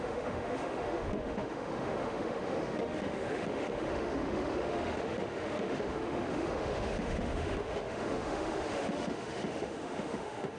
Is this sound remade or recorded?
remade